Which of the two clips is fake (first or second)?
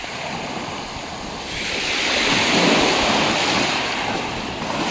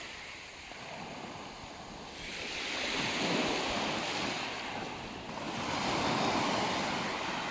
first